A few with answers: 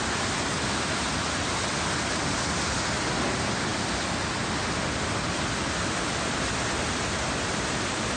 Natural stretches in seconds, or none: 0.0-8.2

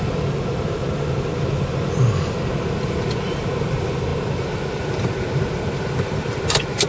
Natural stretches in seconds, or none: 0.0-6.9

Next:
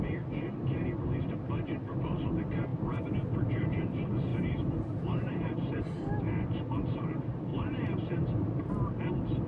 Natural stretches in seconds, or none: 0.0-4.3; 5.8-7.5; 9.1-9.5